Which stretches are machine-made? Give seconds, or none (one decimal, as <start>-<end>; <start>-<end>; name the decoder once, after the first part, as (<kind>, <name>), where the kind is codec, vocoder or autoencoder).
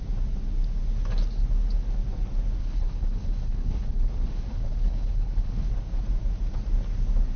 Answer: 2.6-5.7 (codec, HILCodec)